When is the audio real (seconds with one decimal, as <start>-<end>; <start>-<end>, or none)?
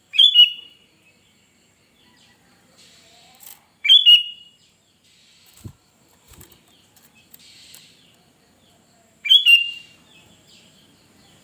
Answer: none